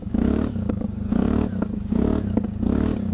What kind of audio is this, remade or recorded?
remade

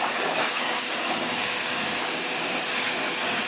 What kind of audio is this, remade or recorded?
remade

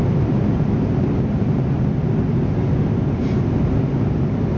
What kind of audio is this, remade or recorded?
recorded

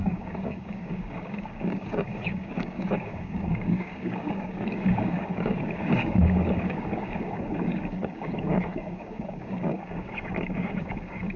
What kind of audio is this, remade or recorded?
remade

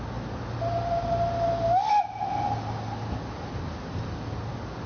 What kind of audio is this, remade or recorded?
recorded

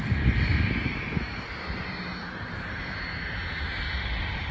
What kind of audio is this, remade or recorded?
recorded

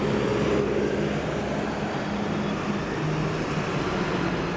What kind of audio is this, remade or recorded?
recorded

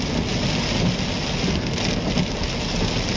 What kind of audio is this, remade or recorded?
recorded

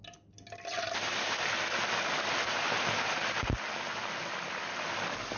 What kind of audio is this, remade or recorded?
recorded